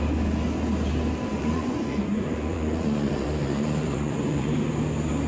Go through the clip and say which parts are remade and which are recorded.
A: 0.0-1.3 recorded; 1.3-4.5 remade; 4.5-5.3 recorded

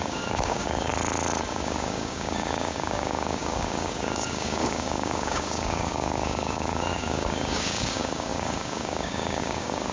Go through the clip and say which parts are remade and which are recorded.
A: 0.0-0.9 remade; 0.9-1.5 recorded; 1.5-9.9 remade

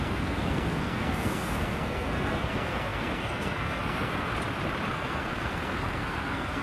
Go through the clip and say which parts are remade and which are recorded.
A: 0.0-4.3 remade; 4.3-4.9 recorded; 4.9-6.6 remade

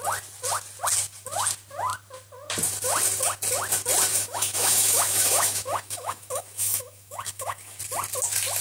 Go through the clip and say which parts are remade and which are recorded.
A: 0.0-4.1 recorded; 4.1-7.8 remade; 7.8-8.6 recorded

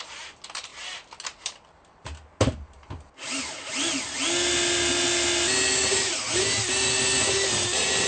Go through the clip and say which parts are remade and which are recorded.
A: 0.0-8.1 recorded

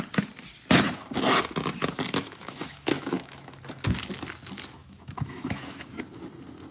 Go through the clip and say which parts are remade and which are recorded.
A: 0.0-2.2 recorded; 2.2-3.6 remade; 3.6-4.8 recorded; 4.8-6.0 remade; 6.0-6.7 recorded

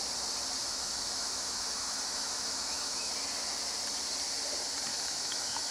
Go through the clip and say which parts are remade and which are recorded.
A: 0.0-0.6 recorded; 0.6-3.1 remade; 3.1-4.9 recorded; 4.9-5.7 remade